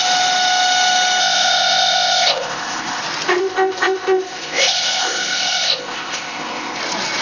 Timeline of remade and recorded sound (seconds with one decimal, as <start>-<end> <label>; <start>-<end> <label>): 0.0-1.2 recorded; 1.2-3.0 remade; 3.0-3.4 recorded; 3.4-6.8 remade; 6.8-7.2 recorded